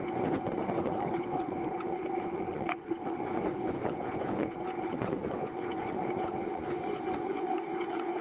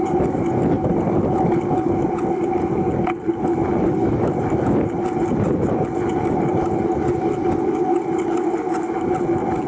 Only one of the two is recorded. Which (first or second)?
second